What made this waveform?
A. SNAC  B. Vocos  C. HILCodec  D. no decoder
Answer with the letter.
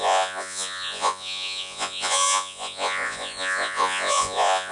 B